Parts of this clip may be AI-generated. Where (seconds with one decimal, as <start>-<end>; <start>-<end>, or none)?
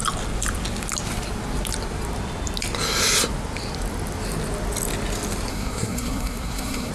5.5-6.9